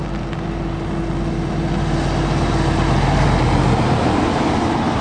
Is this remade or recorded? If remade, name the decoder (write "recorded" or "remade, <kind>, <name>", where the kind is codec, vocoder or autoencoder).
recorded